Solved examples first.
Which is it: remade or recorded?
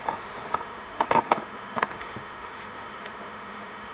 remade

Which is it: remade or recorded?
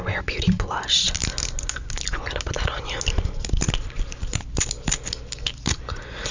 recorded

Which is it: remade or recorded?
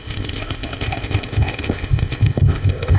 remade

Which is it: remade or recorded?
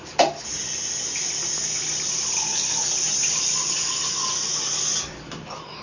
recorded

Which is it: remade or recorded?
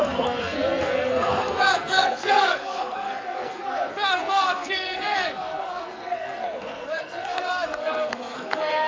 remade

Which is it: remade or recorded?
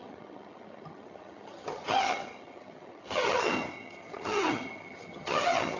remade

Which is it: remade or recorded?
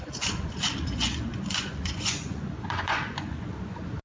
remade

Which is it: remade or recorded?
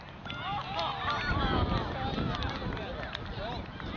recorded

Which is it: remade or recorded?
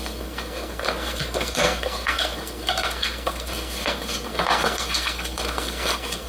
remade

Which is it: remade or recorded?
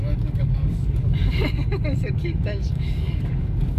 remade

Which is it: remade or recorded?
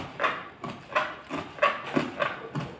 recorded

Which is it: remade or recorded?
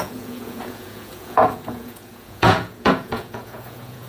remade